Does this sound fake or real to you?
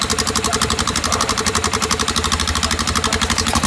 real